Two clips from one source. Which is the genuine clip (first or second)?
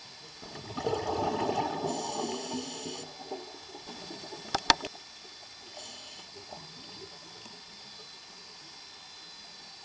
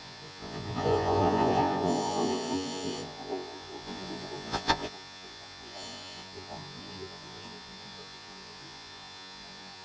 first